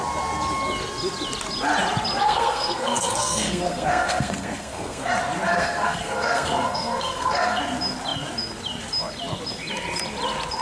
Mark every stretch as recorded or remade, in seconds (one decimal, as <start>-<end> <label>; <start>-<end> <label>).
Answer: 0.0-2.2 recorded; 2.2-5.1 remade; 5.1-5.5 recorded; 5.5-7.6 remade; 7.6-10.6 recorded